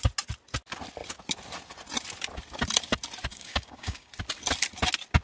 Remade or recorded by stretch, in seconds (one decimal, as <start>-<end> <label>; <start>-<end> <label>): 0.0-3.3 recorded; 3.3-4.1 remade; 4.1-5.2 recorded